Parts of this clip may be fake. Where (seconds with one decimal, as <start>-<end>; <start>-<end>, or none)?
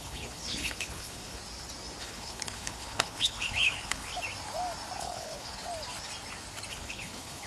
0.0-1.4; 2.0-4.1; 5.0-5.6; 6.7-7.5